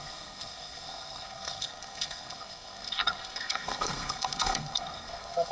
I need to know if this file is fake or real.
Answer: fake